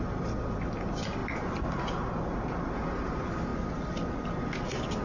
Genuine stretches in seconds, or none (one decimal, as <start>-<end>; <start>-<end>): 1.2-2.7; 3.5-5.0

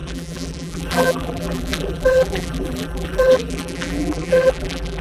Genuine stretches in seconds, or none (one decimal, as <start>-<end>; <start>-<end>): none

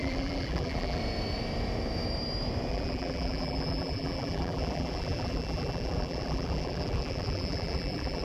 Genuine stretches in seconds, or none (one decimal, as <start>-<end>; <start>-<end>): 1.0-2.7

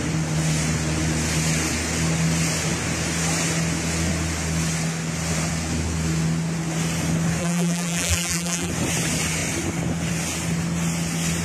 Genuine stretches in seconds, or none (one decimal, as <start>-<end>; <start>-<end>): 0.0-7.4; 8.7-11.4

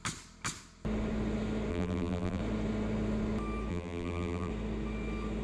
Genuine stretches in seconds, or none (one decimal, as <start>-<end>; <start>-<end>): 0.0-1.7; 2.4-3.7; 4.5-5.4

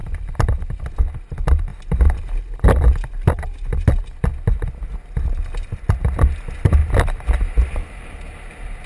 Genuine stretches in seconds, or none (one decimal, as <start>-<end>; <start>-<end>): 0.0-8.9

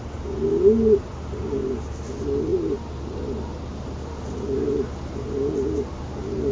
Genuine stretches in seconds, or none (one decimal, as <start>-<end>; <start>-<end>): 0.0-1.6; 2.1-6.5

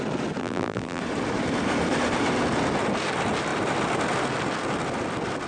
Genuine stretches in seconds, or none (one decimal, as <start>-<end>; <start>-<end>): 0.0-0.4; 1.0-5.5